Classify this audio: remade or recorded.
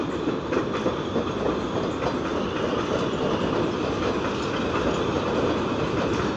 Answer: recorded